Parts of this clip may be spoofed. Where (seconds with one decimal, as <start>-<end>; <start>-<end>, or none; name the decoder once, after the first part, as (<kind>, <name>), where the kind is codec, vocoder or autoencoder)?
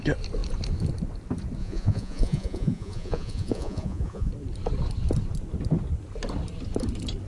1.6-4.3 (vocoder, Vocos)